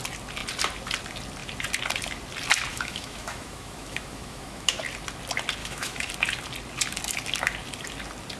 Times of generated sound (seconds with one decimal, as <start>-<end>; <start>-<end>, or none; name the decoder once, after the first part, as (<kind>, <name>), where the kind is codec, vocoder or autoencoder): 2.7-4.8 (autoencoder, DAC-VAE); 5.6-6.1